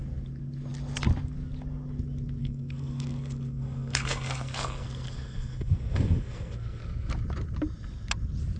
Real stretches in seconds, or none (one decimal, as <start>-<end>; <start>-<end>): 0.0-2.4; 7.1-8.6